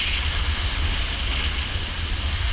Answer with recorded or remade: recorded